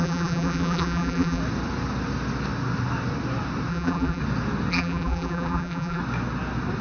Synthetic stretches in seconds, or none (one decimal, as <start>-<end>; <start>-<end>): 0.0-1.4; 3.7-4.2; 4.7-6.0